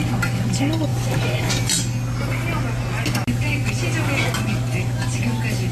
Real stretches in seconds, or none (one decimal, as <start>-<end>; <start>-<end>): 0.0-5.7